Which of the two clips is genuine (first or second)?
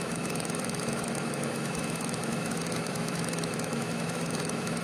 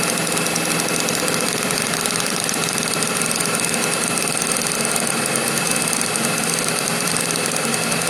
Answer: second